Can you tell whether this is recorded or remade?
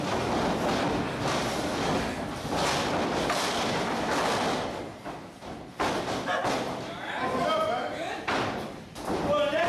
recorded